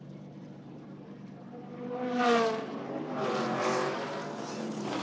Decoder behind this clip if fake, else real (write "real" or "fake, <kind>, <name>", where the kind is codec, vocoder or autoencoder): fake, vocoder, BigVGAN v2